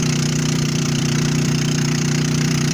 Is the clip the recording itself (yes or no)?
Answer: no